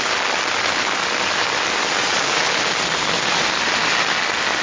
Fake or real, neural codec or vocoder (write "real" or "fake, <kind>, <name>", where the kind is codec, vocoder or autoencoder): real